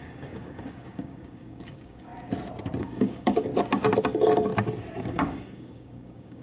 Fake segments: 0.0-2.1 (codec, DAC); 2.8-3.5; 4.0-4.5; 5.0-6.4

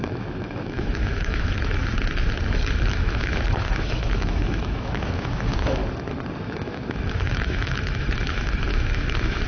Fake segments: 0.0-1.8 (autoencoder, DAC-VAE); 2.9-5.8; 6.4-9.5

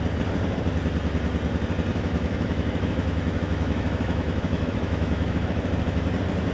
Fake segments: 1.9-5.7 (autoencoder, DAC-VAE)

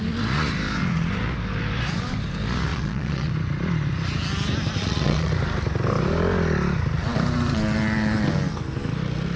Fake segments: 2.7-3.3 (vocoder, Vocos); 4.8-5.3

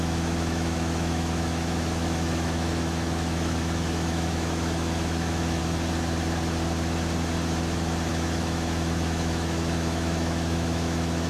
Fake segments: 0.0-5.6 (autoencoder, DAC-VAE); 8.1-11.3

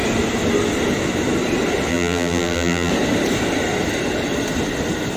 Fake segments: 1.9-2.9 (vocoder, BigVGAN v2)